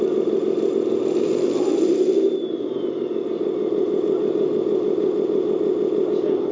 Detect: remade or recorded recorded